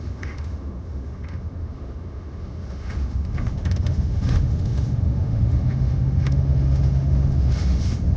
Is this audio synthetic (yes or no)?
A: yes